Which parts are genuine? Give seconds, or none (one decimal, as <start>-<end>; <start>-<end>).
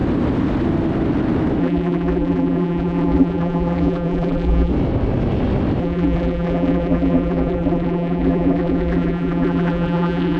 0.0-1.6; 4.7-5.8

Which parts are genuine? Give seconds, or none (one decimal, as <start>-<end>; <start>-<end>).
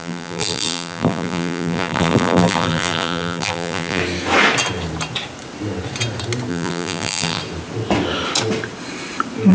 4.0-6.5; 7.4-9.5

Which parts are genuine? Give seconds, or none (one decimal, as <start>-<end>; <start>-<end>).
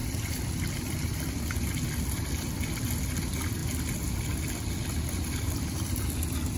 0.0-6.6